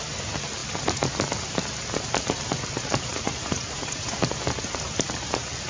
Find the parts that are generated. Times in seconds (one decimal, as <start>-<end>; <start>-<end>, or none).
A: 3.1-4.2